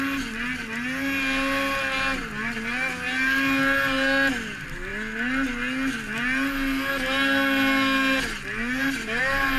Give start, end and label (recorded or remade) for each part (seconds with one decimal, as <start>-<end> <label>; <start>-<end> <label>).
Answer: 0.0-9.6 recorded